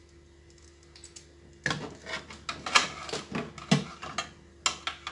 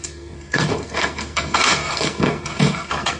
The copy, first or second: second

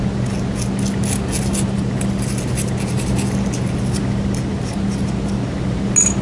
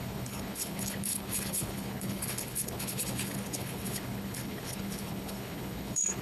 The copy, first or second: second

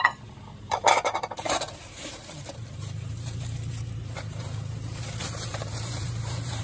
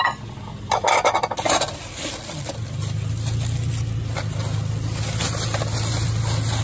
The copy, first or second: first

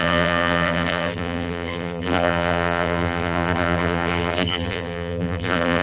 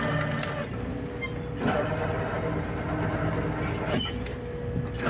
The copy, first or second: first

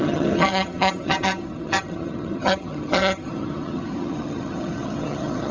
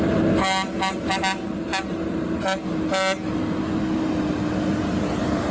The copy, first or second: first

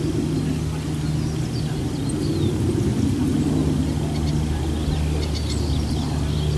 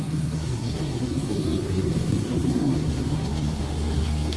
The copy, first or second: second